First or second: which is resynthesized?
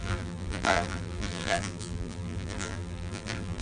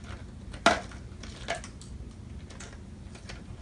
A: first